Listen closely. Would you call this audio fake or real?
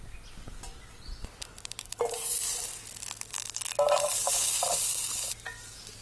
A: real